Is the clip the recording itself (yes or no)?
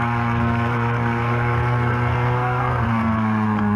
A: no